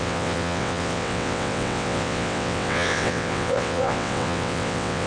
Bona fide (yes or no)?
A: no